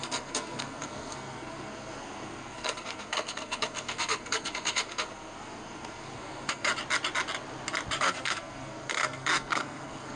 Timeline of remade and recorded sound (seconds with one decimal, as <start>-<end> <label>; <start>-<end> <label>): 0.0-6.7 remade; 6.7-8.0 recorded; 8.0-10.2 remade